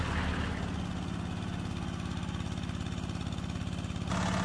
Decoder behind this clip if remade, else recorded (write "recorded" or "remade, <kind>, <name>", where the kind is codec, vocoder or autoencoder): recorded